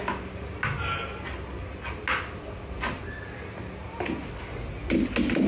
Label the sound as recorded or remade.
recorded